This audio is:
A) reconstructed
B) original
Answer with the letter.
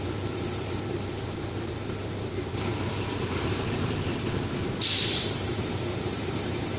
A